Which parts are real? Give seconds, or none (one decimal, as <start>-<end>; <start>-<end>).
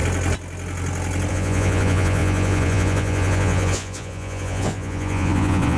0.0-1.3